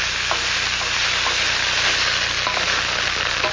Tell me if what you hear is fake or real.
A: real